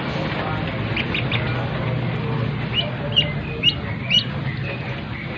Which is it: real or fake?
real